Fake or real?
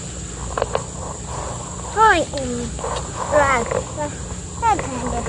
real